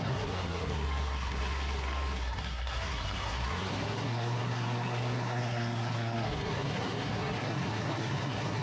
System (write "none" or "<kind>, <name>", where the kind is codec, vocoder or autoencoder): codec, SNAC